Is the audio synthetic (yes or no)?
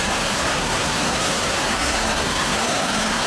yes